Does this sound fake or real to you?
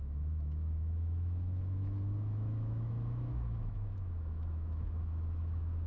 fake